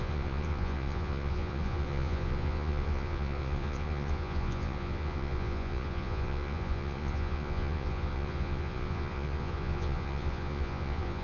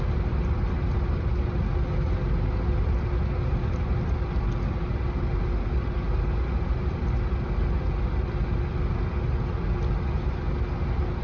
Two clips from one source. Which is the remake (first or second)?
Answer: first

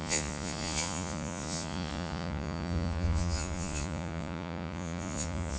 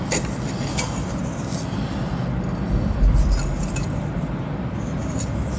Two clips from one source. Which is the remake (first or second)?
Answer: first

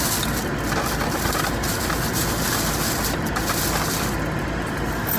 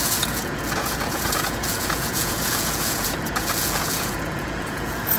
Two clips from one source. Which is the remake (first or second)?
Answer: second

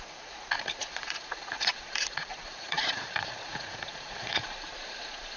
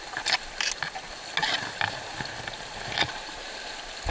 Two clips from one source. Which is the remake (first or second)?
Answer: first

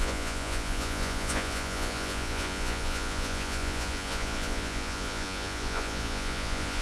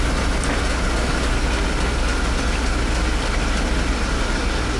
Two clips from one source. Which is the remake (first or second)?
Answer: first